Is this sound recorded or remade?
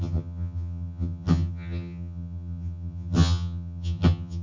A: remade